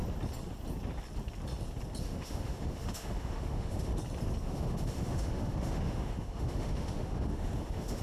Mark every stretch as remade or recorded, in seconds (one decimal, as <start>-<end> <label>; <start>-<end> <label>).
0.0-2.0 recorded; 2.0-3.9 remade; 3.9-4.4 recorded; 4.4-8.0 remade